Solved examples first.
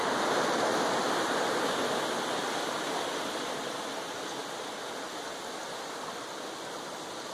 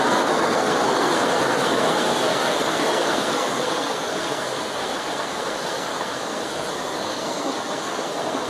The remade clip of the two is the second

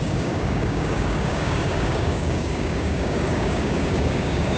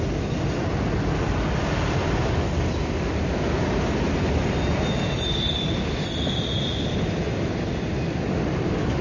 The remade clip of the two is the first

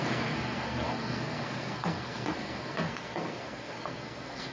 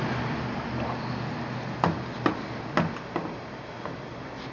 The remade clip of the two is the first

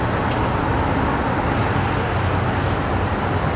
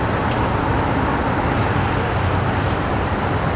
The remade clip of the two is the second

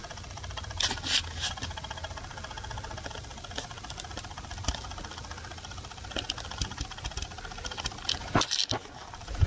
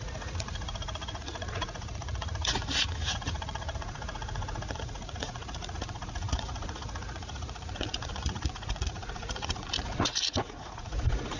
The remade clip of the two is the second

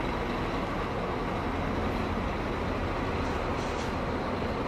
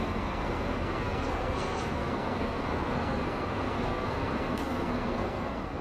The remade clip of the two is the second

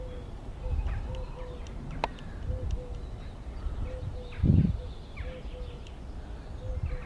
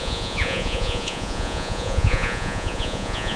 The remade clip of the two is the second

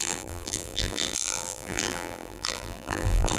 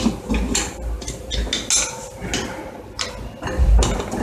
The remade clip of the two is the first